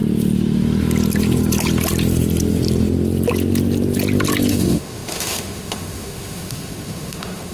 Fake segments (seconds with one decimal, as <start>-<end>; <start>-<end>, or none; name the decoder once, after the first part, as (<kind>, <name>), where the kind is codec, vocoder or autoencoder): 4.5-7.5 (autoencoder, DAC-VAE)